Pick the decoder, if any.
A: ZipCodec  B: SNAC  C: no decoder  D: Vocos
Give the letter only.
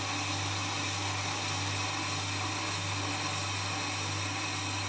C